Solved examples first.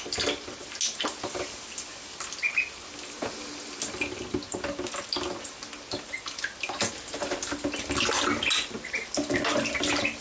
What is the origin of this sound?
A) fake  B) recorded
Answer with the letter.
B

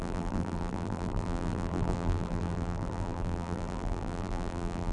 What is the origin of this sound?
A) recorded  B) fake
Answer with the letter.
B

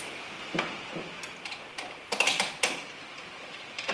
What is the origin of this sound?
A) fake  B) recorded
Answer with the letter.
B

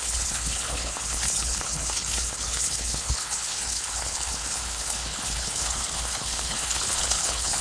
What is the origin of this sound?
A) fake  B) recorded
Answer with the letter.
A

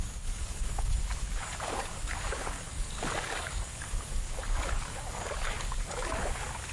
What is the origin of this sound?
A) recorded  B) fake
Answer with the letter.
B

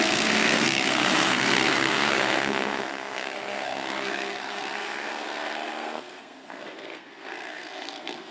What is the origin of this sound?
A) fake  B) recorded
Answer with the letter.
A